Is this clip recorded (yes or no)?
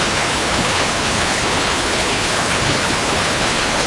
no